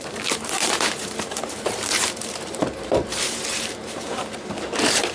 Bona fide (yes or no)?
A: no